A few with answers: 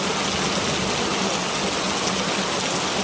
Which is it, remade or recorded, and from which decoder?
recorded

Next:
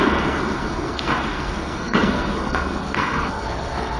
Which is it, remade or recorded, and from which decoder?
remade, codec, SNAC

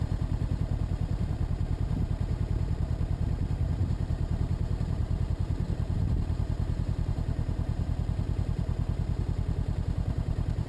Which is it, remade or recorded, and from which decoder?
remade, vocoder, BigVGAN v2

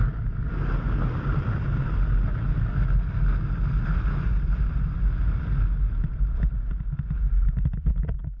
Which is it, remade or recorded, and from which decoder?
recorded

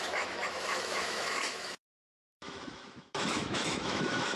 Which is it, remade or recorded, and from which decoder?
remade, autoencoder, DAC-VAE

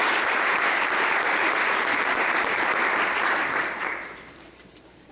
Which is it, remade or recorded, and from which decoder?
remade, vocoder, BigVGAN v2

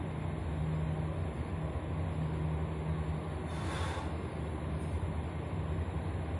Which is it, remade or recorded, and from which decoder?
recorded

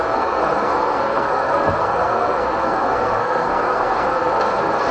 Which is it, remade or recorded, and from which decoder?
remade, codec, SNAC